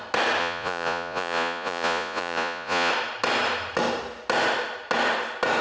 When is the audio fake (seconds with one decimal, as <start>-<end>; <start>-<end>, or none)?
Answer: 0.4-2.9